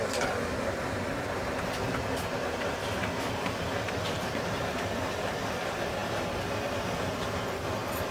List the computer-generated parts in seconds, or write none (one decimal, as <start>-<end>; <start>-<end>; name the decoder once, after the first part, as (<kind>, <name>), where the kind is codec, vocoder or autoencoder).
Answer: none